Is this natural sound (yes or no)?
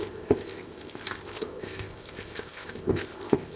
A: no